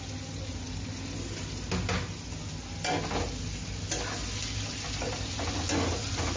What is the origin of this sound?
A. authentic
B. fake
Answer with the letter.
A